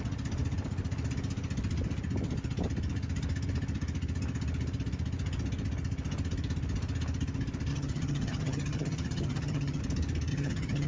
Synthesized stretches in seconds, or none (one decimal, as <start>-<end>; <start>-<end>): 7.7-9.8; 10.3-10.9